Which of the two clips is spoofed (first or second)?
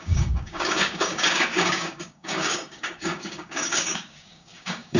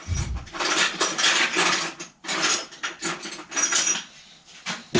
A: first